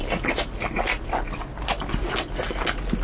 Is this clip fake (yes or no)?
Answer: no